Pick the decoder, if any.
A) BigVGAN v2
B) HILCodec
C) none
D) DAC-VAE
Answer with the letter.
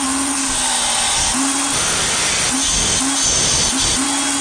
C